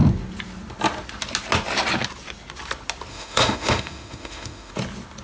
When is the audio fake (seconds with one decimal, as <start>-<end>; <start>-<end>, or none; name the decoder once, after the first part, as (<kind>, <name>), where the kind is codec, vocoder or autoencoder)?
3.1-4.7 (autoencoder, DAC-VAE)